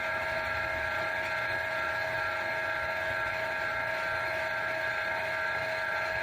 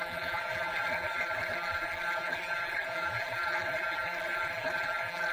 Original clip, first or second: first